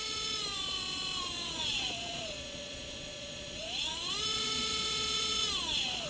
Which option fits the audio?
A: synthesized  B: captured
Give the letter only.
A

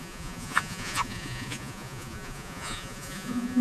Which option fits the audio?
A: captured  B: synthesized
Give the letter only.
B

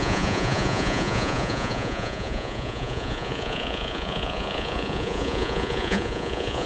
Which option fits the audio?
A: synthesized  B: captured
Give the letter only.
A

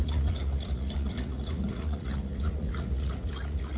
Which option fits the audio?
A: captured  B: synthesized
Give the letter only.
B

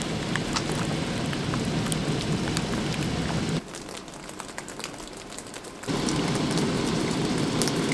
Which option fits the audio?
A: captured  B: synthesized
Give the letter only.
A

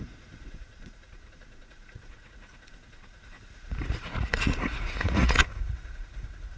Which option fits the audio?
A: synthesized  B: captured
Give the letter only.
A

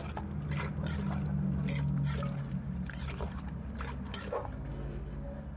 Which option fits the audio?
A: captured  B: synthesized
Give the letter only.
A